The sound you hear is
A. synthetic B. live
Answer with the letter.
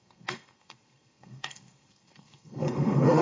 A